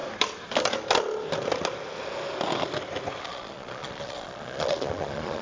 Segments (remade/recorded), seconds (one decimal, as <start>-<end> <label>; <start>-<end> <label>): 0.0-3.2 recorded; 3.2-5.4 remade